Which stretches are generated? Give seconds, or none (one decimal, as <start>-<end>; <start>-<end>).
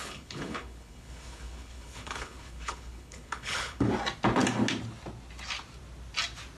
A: 0.0-3.9